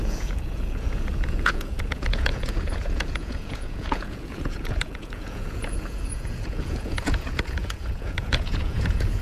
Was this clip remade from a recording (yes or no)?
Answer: yes